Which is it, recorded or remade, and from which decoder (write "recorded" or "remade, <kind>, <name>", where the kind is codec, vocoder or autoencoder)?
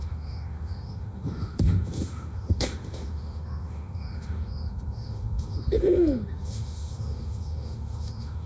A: remade, autoencoder, DAC-VAE